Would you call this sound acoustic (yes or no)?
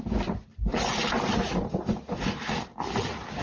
yes